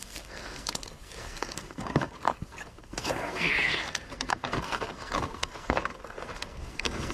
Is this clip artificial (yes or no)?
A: yes